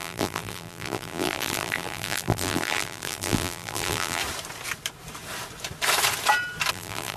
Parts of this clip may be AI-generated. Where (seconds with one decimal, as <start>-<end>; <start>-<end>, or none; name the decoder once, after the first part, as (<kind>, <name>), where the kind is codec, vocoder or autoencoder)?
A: 0.0-4.2 (vocoder, BigVGAN v2); 6.7-7.2